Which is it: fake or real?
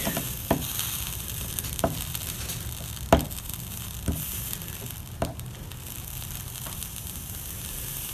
fake